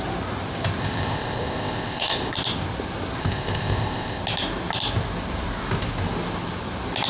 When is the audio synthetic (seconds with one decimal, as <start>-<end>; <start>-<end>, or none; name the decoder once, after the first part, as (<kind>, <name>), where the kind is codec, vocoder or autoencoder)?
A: 0.8-2.3 (codec, ZipCodec); 3.2-4.2